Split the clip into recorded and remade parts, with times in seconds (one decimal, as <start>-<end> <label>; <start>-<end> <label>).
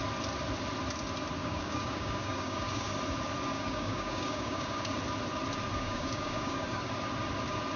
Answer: 0.0-1.4 recorded; 1.4-2.9 remade; 2.9-3.5 recorded; 3.5-5.0 remade; 5.0-5.7 recorded; 5.7-6.9 remade; 6.9-7.8 recorded